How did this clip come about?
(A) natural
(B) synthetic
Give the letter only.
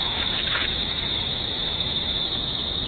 B